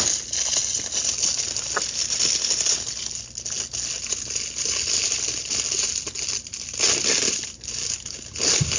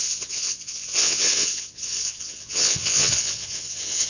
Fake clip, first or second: second